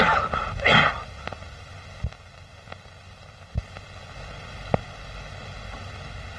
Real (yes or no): yes